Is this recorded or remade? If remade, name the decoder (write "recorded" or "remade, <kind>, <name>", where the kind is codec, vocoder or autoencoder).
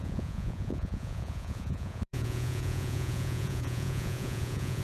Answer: remade, vocoder, Vocos